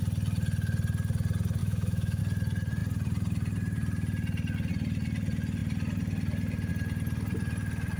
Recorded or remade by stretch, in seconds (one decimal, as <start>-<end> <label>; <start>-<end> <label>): 0.0-1.6 recorded; 1.6-2.2 remade; 2.2-8.0 recorded

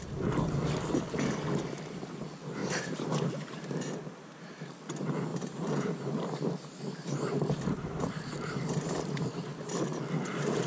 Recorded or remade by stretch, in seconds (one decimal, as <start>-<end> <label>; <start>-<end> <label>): 0.0-2.6 recorded; 2.6-3.8 remade; 3.8-5.3 recorded; 5.3-9.8 remade; 9.8-10.7 recorded

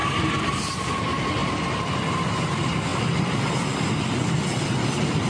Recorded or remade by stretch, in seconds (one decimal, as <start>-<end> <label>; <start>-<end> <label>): 0.0-5.3 recorded

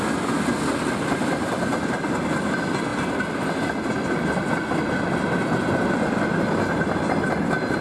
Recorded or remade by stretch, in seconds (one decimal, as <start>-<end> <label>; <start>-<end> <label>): 0.0-7.8 recorded

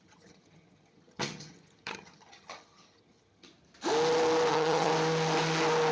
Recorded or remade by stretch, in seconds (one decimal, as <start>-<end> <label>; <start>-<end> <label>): 0.0-3.5 remade; 3.5-4.5 recorded; 4.5-4.9 remade; 4.9-5.9 recorded

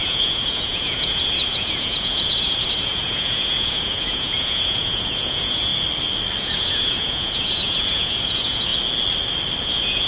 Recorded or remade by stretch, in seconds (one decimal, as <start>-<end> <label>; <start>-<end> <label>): 0.0-5.7 remade; 5.7-6.4 recorded; 6.4-8.7 remade; 8.7-9.6 recorded; 9.6-10.1 remade

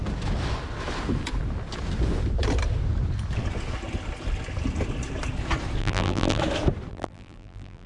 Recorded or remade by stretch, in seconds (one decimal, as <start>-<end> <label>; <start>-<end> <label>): 0.0-5.8 recorded; 5.8-6.4 remade; 6.4-6.9 recorded; 6.9-7.9 remade

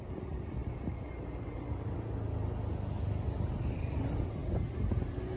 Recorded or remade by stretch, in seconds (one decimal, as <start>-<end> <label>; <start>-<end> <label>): 0.0-5.4 recorded